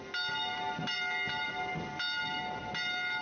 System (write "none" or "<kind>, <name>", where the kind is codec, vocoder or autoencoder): none